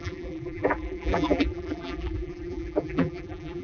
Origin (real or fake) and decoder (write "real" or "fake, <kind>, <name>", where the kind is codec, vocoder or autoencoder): fake, vocoder, BigVGAN v2